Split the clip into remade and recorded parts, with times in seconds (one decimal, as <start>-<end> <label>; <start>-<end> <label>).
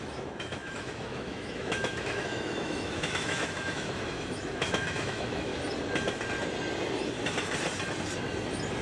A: 0.0-5.5 remade; 5.5-8.8 recorded